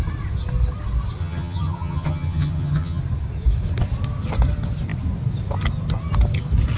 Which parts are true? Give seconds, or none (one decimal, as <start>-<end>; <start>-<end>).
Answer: 0.0-1.2; 3.0-6.8